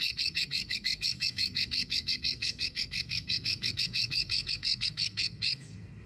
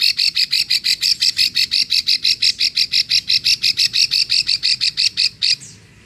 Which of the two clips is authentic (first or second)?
second